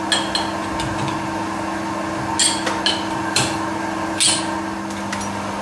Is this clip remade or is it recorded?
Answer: recorded